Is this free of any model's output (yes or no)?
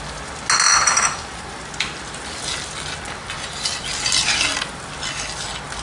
yes